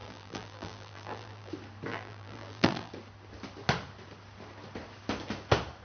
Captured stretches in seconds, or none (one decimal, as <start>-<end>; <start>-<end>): 1.5-1.9; 2.9-5.8